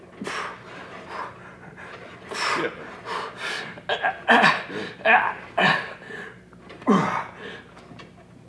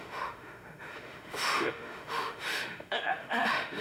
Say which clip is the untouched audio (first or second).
first